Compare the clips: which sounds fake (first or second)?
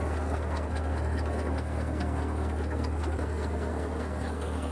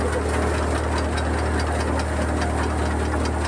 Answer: first